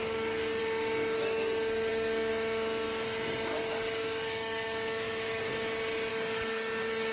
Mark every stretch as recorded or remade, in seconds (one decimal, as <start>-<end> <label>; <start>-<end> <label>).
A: 0.0-0.6 remade; 0.6-1.9 recorded; 1.9-2.3 remade; 2.3-3.6 recorded; 3.6-5.5 remade; 5.5-6.1 recorded; 6.1-7.1 remade